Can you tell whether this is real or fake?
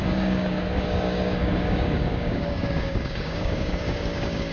fake